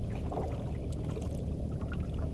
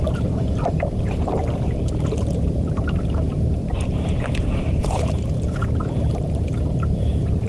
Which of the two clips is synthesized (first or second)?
second